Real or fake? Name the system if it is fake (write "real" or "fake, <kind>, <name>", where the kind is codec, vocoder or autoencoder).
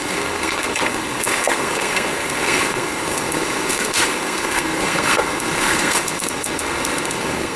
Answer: fake, codec, SNAC